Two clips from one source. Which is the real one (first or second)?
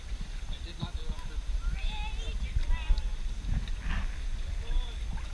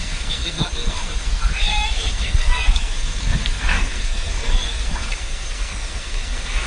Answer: first